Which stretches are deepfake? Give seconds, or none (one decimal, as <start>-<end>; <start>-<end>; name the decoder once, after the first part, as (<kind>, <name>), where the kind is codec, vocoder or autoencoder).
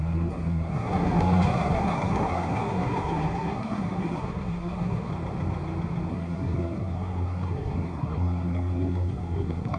0.0-5.1 (codec, SNAC); 6.1-9.8